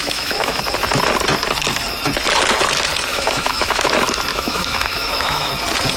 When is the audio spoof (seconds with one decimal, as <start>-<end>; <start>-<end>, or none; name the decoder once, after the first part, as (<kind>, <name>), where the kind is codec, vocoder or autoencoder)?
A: 0.0-0.6 (autoencoder, DAC-VAE); 3.1-3.9; 4.3-5.5